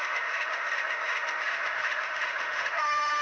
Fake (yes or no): yes